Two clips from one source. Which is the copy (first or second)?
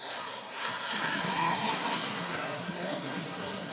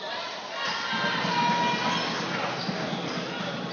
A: first